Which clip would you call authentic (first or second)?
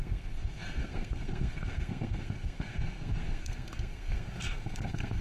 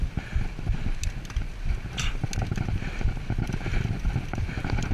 second